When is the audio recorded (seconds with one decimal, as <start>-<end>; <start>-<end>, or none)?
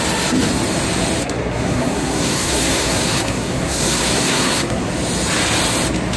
0.0-1.2; 4.9-6.2